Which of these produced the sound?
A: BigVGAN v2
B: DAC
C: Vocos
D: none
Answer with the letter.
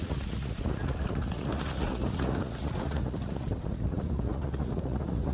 C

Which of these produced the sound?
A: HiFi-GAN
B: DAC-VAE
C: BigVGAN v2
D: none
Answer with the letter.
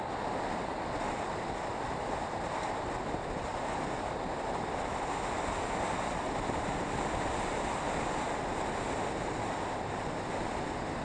D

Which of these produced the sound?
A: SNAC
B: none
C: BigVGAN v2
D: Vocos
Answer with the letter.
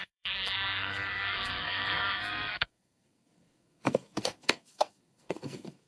A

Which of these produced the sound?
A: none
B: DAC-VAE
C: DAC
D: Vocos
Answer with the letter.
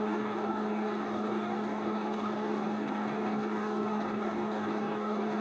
C